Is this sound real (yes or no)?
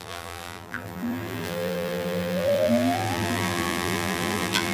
no